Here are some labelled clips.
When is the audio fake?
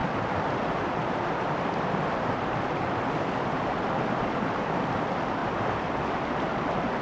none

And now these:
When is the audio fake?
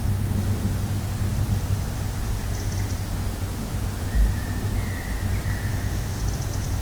5.7-6.2 (autoencoder, DAC-VAE)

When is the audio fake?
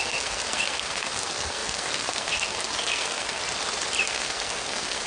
0.0-3.4 (codec, SNAC); 4.0-5.1